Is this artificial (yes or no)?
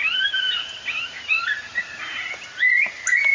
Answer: no